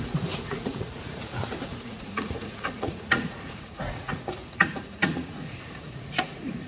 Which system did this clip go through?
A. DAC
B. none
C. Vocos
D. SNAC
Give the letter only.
C